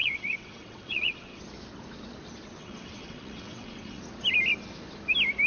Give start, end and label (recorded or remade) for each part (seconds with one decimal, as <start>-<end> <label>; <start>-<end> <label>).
0.0-1.4 remade; 1.4-2.6 recorded; 2.6-4.0 remade; 4.0-5.5 recorded